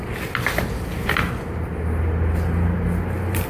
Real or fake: real